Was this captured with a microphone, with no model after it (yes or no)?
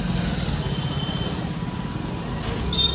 yes